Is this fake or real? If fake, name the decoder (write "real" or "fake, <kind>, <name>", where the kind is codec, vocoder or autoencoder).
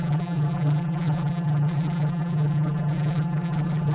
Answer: fake, vocoder, BigVGAN v2